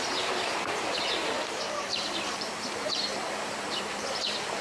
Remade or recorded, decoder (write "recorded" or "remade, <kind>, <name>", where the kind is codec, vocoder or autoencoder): remade, vocoder, BigVGAN v2